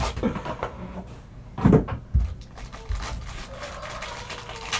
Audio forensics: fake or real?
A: real